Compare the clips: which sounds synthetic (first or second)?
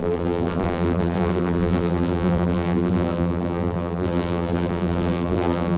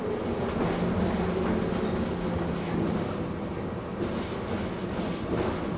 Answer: first